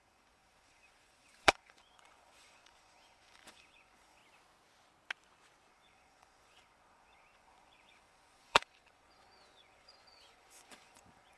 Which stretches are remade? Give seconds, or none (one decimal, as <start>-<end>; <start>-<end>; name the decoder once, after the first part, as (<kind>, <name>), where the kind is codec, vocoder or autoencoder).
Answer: 0.0-4.2 (vocoder, Vocos); 5.7-11.4